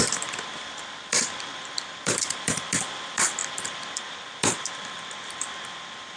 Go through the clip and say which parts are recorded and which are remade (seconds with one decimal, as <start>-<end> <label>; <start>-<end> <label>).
0.0-6.2 remade